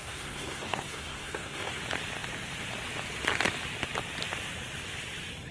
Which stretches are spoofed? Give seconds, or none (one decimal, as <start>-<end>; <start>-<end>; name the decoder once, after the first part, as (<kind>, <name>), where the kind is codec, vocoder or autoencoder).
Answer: 0.0-1.8 (codec, SNAC)